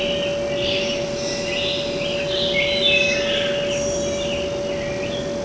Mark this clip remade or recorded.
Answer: recorded